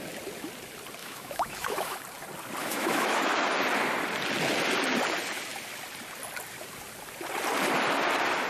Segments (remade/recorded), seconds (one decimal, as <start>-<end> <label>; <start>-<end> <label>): 0.0-1.0 recorded; 1.0-2.0 remade; 2.0-2.6 recorded; 2.6-3.5 remade; 3.5-8.5 recorded